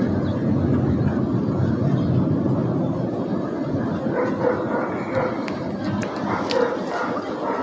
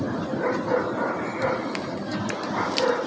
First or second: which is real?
first